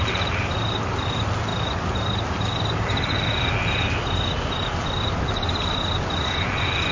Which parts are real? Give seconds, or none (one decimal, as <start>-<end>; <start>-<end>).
0.0-6.9